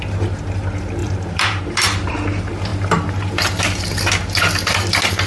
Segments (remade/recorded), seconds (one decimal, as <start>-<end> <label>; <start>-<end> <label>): 0.0-1.0 recorded; 1.0-1.6 remade; 1.6-5.3 recorded